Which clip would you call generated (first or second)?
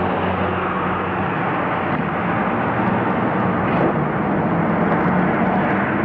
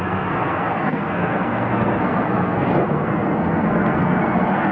second